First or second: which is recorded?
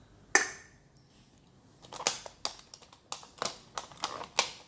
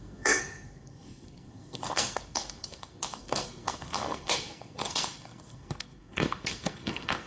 first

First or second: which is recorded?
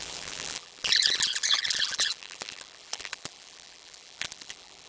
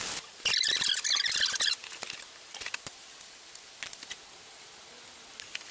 second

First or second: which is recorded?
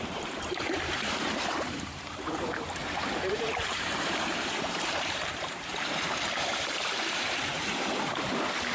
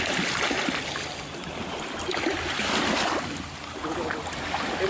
second